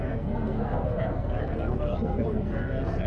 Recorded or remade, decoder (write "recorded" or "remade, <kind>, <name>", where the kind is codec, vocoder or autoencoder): remade, codec, SNAC